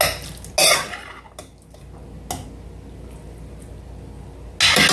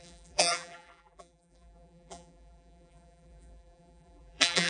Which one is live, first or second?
first